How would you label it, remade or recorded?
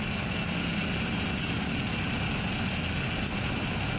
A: recorded